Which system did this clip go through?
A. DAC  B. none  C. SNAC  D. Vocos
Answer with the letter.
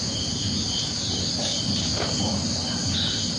B